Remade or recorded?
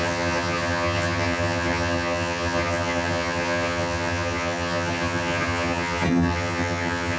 remade